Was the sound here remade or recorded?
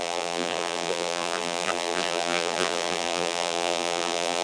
remade